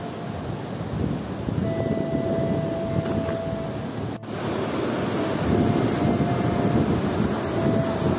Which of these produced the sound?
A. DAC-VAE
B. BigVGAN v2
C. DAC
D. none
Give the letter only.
D